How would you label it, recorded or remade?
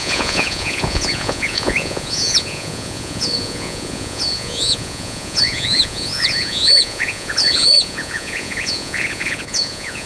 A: remade